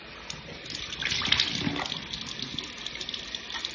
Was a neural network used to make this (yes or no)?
no